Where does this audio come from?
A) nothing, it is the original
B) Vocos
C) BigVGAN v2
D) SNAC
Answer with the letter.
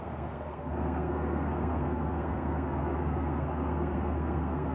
D